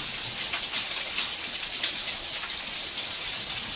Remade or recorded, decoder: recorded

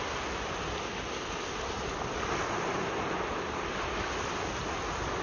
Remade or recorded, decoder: recorded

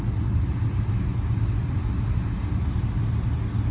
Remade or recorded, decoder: recorded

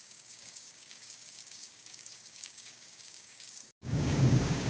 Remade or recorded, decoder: remade, codec, DAC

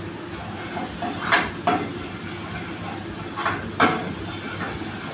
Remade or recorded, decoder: recorded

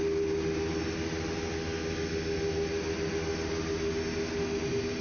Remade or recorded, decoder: recorded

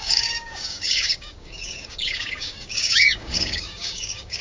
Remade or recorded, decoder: remade, codec, DAC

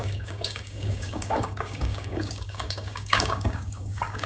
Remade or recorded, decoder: remade, codec, DAC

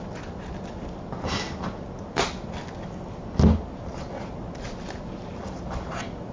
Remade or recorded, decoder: recorded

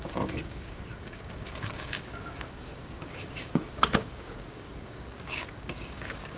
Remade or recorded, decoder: remade, codec, DAC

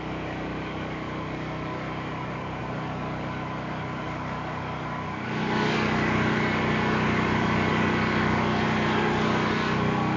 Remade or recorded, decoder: remade, codec, DAC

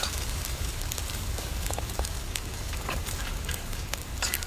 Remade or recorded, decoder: remade, codec, DAC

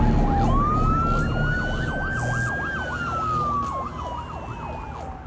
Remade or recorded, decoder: recorded